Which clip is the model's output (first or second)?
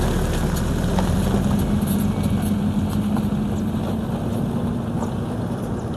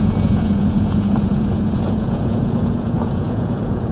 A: second